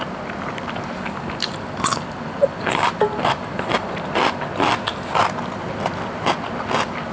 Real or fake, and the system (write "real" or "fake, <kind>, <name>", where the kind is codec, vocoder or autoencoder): real